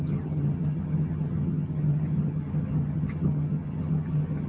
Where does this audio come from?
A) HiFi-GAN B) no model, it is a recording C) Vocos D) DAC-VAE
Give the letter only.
A